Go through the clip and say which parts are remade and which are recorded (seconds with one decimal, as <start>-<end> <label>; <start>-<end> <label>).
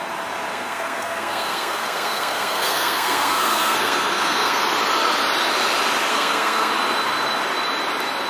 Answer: 0.0-0.5 recorded; 0.5-4.6 remade; 4.6-6.1 recorded; 6.1-6.7 remade; 6.7-8.3 recorded